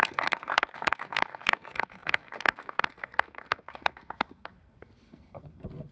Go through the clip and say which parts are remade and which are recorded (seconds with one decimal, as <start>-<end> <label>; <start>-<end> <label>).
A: 0.0-5.9 remade

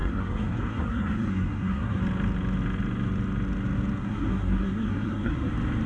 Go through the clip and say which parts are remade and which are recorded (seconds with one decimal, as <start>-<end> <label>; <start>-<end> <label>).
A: 0.0-2.0 remade; 2.0-4.0 recorded; 4.0-5.5 remade; 5.5-5.9 recorded

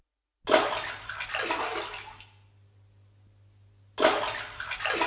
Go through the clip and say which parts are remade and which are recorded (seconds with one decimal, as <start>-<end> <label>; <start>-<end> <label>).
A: 0.0-5.1 recorded

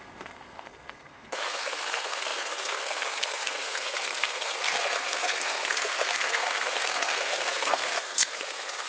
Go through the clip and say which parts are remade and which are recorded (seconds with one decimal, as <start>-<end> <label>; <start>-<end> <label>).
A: 0.0-8.9 remade

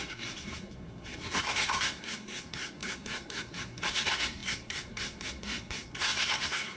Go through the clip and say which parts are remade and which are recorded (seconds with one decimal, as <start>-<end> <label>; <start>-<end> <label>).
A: 0.0-6.8 remade

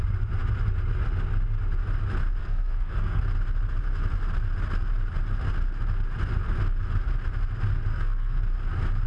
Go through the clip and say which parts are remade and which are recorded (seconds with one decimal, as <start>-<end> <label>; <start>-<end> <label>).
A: 0.0-2.4 recorded; 2.4-3.2 remade; 3.2-7.9 recorded; 7.9-8.4 remade; 8.4-9.1 recorded